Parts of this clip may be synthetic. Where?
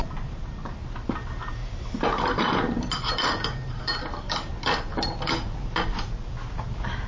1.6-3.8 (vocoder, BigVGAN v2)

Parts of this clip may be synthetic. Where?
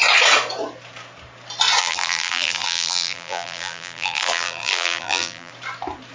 1.8-5.5 (vocoder, BigVGAN v2)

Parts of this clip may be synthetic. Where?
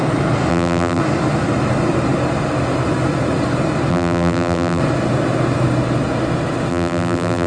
0.5-1.0 (vocoder, BigVGAN v2); 3.9-4.8; 6.7-7.5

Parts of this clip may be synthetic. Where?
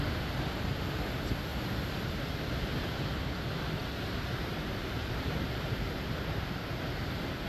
1.5-2.4 (vocoder, BigVGAN v2); 5.0-6.5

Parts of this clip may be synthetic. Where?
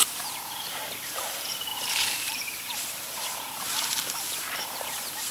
0.0-5.3 (vocoder, BigVGAN v2)